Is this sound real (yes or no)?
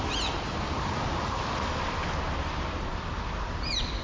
yes